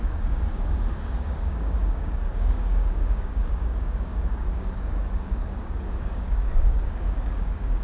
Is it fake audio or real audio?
fake